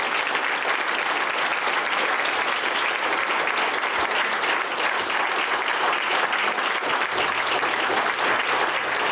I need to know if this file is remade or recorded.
recorded